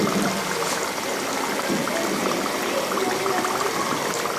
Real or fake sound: real